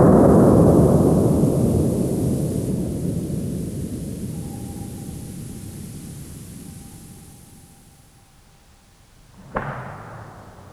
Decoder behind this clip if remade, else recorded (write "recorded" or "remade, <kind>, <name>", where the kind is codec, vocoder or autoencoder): recorded